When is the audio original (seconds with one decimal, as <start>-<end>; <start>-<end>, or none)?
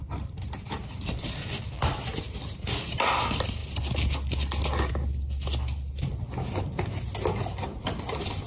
0.0-8.5